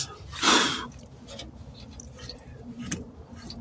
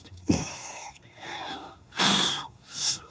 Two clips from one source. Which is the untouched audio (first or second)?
first